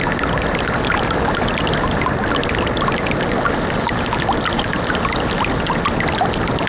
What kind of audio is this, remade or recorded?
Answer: recorded